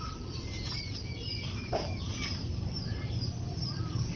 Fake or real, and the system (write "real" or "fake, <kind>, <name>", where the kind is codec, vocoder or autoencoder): fake, vocoder, BigVGAN v2